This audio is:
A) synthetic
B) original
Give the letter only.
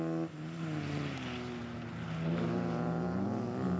B